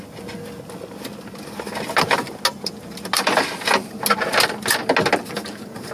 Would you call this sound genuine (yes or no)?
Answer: yes